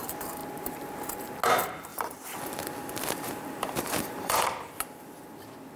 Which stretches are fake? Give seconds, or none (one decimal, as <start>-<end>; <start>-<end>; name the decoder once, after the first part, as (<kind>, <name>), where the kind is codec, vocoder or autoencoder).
1.9-4.5 (vocoder, BigVGAN v2)